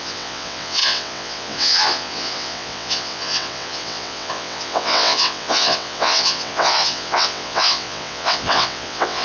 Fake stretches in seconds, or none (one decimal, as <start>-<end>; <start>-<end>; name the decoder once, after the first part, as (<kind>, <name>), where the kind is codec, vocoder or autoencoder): 0.0-9.2 (vocoder, WaveNeXt)